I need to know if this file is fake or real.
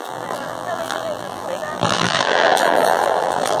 fake